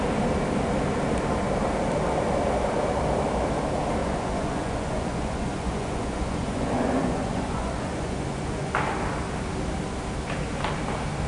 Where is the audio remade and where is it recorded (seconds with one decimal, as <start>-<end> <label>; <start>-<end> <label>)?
0.0-4.0 recorded; 4.0-8.7 remade; 8.7-11.3 recorded